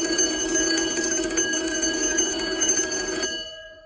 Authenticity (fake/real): fake